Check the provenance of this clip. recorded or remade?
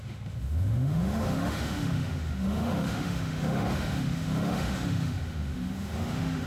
remade